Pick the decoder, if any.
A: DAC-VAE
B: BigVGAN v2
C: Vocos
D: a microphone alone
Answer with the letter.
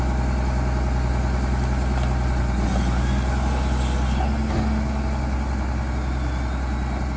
D